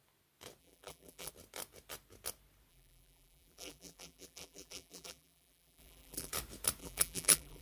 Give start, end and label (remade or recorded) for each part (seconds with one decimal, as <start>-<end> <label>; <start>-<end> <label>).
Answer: 0.0-0.6 recorded; 0.6-1.3 remade; 1.3-2.7 recorded; 2.7-6.3 remade; 6.3-6.8 recorded; 6.8-7.6 remade